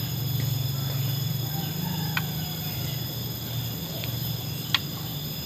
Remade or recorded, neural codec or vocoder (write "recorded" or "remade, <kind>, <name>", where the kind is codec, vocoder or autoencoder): remade, vocoder, BigVGAN v2